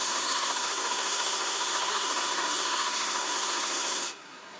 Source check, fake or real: fake